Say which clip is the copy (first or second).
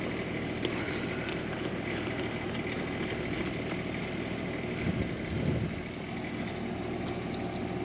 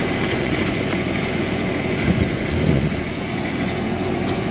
second